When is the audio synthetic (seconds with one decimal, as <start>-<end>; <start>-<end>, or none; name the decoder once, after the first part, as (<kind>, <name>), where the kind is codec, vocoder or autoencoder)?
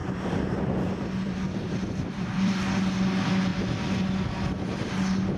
0.0-2.5 (vocoder, BigVGAN v2)